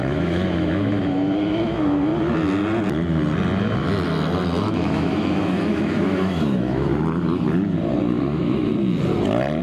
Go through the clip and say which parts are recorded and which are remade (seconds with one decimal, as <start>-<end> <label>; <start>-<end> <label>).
0.0-2.1 remade; 2.1-4.6 recorded; 4.6-6.9 remade; 6.9-8.2 recorded; 8.2-8.7 remade; 8.7-9.6 recorded